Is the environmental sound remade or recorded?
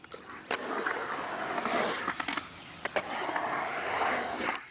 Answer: recorded